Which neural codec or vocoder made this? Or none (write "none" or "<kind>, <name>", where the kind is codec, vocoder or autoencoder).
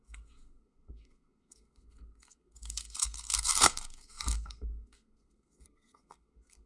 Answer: codec, SNAC